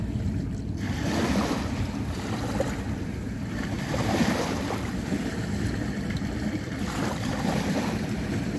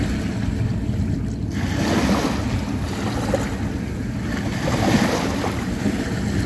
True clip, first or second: second